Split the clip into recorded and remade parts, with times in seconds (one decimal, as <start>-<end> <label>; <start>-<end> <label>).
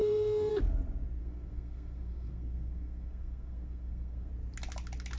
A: 0.0-0.5 remade; 0.5-1.2 recorded; 1.2-4.3 remade; 4.3-5.2 recorded